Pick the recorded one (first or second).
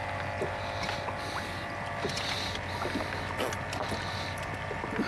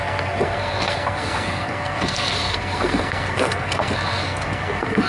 first